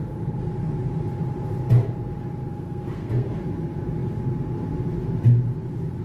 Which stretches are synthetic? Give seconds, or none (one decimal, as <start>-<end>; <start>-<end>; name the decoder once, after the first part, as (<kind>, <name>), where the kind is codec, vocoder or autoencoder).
2.5-3.3 (codec, SNAC)